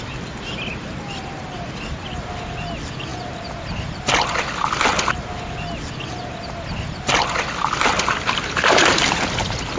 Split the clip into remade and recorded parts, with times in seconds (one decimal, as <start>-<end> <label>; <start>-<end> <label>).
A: 0.0-9.8 recorded